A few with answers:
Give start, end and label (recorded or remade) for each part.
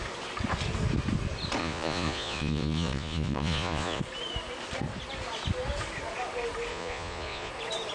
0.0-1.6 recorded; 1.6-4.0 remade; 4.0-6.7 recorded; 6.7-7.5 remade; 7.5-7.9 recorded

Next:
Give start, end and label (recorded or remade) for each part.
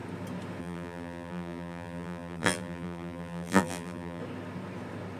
0.0-0.6 recorded; 0.6-4.2 remade; 4.2-5.2 recorded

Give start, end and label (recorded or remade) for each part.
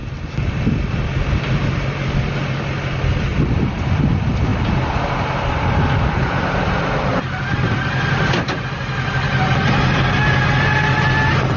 0.0-11.6 recorded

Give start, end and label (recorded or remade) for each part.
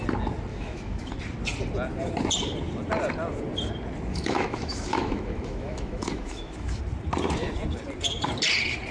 0.0-0.5 recorded; 0.5-1.1 remade; 1.1-4.1 recorded; 4.1-6.8 remade; 6.8-8.9 recorded